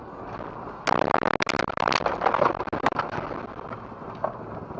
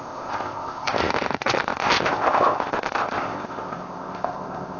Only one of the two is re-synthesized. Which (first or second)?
second